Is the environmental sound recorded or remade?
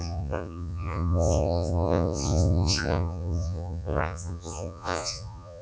remade